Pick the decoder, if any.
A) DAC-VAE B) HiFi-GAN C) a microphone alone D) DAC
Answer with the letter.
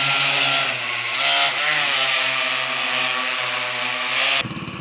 C